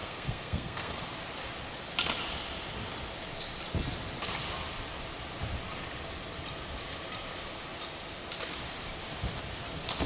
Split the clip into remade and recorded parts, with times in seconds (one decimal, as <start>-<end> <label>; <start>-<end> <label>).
0.0-1.0 remade; 1.0-10.1 recorded